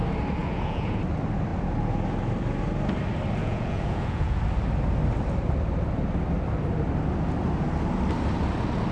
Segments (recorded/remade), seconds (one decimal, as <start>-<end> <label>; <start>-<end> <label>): 0.0-0.4 recorded; 0.4-1.0 remade; 1.0-3.4 recorded; 3.4-4.4 remade; 4.4-8.9 recorded